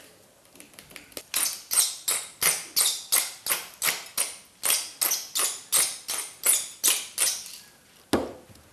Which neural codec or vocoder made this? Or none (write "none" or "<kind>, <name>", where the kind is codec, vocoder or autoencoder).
none